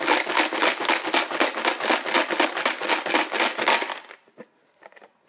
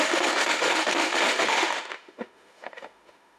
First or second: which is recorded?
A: first